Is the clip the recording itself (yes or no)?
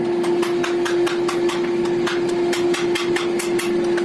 yes